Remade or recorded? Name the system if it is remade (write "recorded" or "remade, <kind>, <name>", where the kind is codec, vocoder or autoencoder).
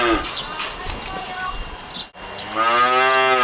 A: recorded